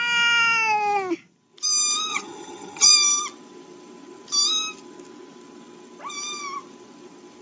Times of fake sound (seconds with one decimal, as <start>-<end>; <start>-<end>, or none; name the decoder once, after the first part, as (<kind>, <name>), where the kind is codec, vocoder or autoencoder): 2.1-2.9 (vocoder, HiFi-GAN)